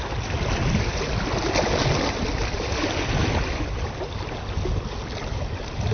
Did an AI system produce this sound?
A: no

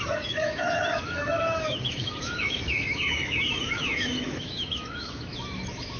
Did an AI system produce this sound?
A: yes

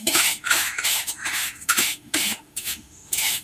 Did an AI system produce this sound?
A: yes